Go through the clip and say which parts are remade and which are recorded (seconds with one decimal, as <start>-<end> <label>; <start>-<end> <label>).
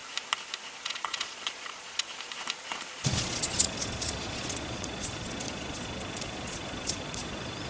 0.0-0.8 recorded; 0.8-2.1 remade; 2.1-2.9 recorded; 2.9-7.7 remade